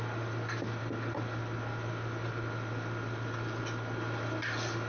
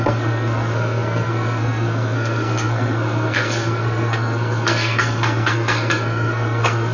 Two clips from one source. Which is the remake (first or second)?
second